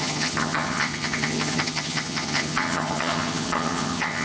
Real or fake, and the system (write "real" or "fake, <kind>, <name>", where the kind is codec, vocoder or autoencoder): fake, vocoder, HiFi-GAN